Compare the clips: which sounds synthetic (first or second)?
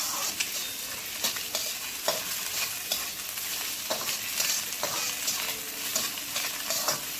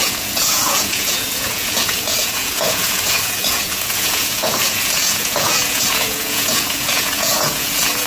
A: second